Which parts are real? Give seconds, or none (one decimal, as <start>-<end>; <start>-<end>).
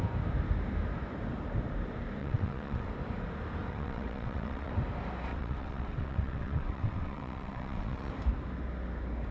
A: 0.0-2.2; 2.9-3.7; 4.7-5.3; 8.1-9.3